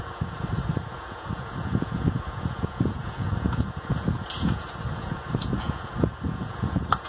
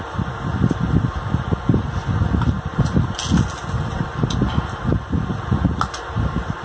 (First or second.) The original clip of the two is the second